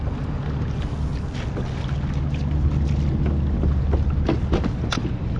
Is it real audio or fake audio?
real